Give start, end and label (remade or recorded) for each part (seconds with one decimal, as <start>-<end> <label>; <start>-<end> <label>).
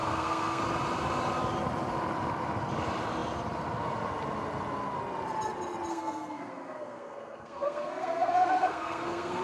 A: 0.0-0.6 remade; 0.6-5.9 recorded; 5.9-9.4 remade